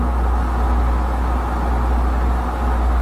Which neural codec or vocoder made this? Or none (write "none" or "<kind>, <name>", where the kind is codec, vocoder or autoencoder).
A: none